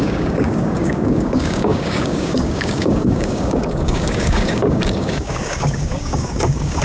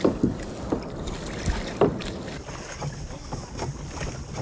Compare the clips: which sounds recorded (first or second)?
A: second